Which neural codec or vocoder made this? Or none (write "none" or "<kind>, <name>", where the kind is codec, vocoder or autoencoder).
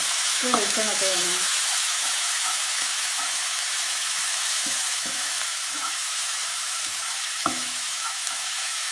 autoencoder, DAC-VAE